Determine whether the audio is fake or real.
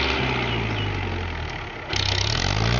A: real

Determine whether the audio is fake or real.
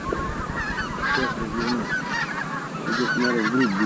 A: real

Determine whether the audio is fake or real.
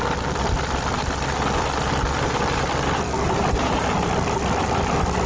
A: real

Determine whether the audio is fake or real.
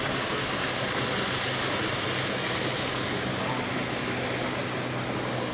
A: real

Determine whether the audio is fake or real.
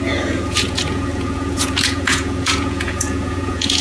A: fake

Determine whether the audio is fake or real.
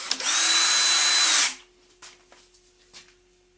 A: real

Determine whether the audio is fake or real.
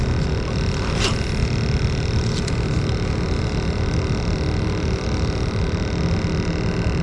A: real